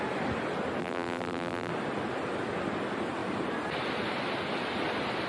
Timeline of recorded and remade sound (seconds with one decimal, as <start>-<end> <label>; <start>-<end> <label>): 0.0-0.8 recorded; 0.8-1.7 remade; 1.7-5.3 recorded